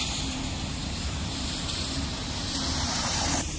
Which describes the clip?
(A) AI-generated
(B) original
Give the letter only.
A